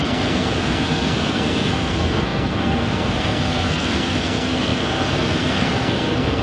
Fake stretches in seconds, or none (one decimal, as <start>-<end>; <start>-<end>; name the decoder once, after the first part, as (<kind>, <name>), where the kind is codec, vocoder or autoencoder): 0.0-6.4 (codec, SNAC)